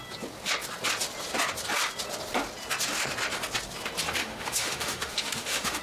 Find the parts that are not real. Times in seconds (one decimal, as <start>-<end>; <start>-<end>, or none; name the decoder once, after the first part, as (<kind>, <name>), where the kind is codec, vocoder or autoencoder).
4.2-5.8 (autoencoder, DAC-VAE)